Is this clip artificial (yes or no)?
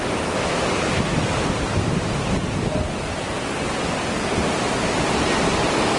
no